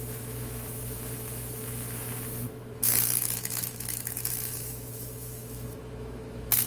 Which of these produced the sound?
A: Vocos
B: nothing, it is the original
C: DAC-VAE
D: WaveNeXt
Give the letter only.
C